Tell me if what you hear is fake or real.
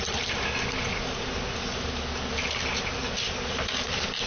real